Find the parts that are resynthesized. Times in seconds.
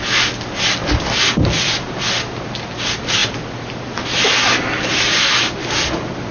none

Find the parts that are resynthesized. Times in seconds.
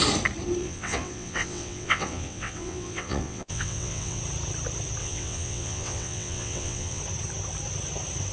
0.6-4.2 (vocoder, WaveNeXt); 5.0-7.0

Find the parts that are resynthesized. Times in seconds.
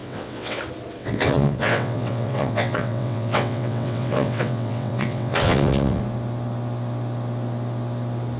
0.0-0.6 (vocoder, WaveNeXt); 1.0-6.0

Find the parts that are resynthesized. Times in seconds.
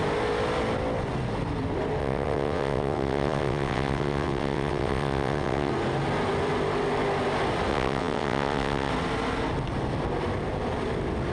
2.0-5.7 (vocoder, WaveNeXt); 7.7-8.9